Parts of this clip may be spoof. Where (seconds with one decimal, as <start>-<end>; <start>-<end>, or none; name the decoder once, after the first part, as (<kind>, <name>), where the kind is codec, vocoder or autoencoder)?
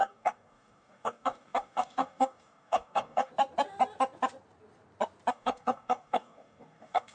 0.0-3.3 (codec, DAC); 5.3-7.1